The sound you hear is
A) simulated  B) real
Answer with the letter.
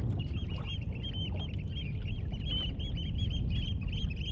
B